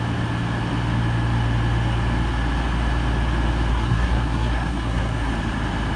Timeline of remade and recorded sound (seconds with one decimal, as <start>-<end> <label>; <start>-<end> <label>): 0.0-3.7 recorded; 3.7-5.3 remade; 5.3-6.0 recorded